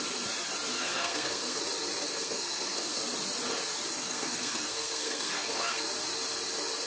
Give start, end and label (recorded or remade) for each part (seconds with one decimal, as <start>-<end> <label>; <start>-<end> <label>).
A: 0.0-0.7 recorded; 0.7-1.6 remade; 1.6-2.1 recorded; 2.1-3.0 remade; 3.0-4.0 recorded; 4.0-5.8 remade; 5.8-6.9 recorded